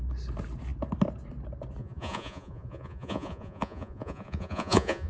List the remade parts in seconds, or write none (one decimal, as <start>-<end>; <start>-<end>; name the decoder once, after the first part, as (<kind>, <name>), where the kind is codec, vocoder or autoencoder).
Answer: 1.8-5.1 (vocoder, Vocos)